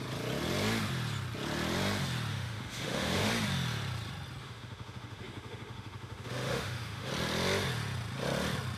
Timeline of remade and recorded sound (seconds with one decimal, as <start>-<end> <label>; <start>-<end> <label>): 0.0-2.3 recorded; 2.3-3.3 remade; 3.3-4.4 recorded; 4.4-7.1 remade; 7.1-8.8 recorded